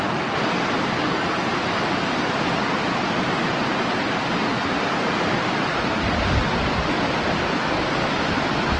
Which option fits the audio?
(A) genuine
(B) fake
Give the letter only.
A